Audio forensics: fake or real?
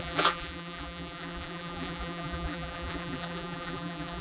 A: fake